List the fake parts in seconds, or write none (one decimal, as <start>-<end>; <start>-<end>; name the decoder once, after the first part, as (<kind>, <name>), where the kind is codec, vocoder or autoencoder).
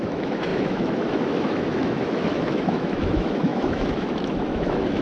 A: 0.0-5.0 (autoencoder, DAC-VAE)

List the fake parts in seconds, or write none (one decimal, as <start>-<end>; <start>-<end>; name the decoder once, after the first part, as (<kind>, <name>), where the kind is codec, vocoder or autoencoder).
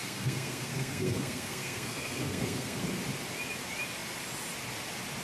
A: 0.0-2.8 (codec, SNAC)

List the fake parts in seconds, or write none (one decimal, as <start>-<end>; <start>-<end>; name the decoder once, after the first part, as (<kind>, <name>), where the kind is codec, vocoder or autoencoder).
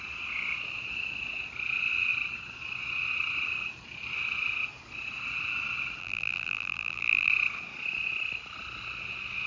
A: 6.0-7.3 (vocoder, BigVGAN v2)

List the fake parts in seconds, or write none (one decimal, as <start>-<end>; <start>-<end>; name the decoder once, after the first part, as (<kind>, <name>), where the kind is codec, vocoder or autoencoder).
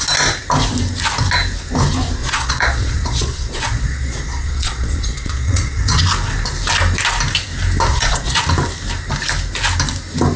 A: 2.2-6.0 (vocoder, Vocos); 7.9-8.4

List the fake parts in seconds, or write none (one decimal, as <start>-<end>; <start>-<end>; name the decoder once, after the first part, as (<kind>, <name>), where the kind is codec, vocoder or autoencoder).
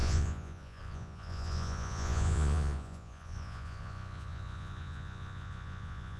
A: 0.0-6.2 (vocoder, Vocos)